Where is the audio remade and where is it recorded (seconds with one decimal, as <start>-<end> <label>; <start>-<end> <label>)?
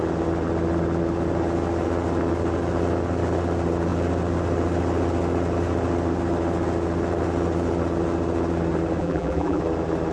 0.0-9.0 recorded; 9.0-9.6 remade; 9.6-10.1 recorded